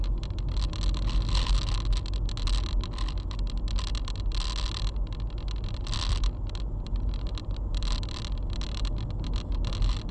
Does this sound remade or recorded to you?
recorded